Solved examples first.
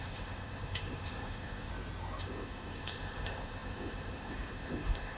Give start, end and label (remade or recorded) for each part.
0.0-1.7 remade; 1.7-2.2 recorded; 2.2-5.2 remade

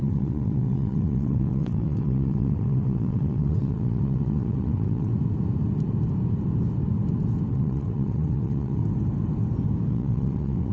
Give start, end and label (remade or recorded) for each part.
0.0-5.1 remade; 5.1-7.5 recorded; 7.5-8.8 remade; 8.8-9.9 recorded; 9.9-10.7 remade

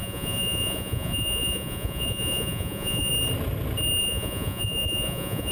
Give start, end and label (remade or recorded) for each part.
0.0-3.1 remade; 3.1-4.0 recorded; 4.0-5.5 remade